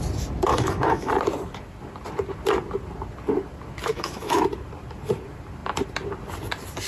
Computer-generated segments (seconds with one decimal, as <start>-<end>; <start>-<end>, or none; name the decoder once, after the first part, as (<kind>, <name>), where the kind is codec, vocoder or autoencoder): 0.5-1.1 (autoencoder, DAC-VAE); 3.9-4.4